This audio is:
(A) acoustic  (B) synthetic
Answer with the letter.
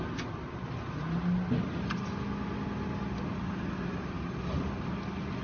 A